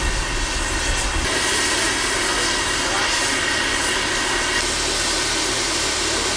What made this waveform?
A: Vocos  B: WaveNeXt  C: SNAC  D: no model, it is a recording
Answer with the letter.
D